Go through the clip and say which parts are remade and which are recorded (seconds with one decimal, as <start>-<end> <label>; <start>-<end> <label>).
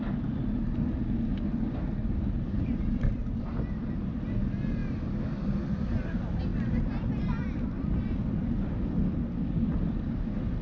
0.0-2.0 recorded; 2.0-3.4 remade; 3.4-10.6 recorded